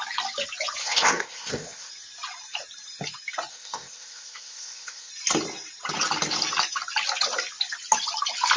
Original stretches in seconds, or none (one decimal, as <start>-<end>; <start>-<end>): 0.0-0.8; 1.9-3.5; 5.1-8.6